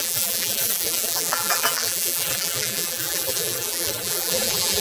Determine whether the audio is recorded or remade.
remade